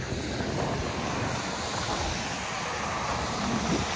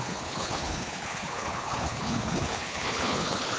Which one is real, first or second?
first